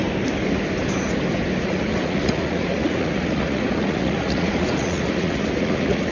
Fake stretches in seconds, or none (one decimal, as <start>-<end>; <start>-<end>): 1.6-6.1